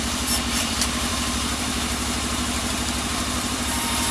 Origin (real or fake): fake